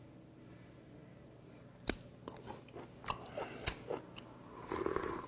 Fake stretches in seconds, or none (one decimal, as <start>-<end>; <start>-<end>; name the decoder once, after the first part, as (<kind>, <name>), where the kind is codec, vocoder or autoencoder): none